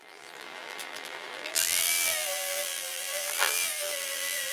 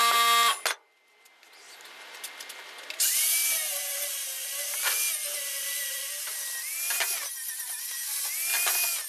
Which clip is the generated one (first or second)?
first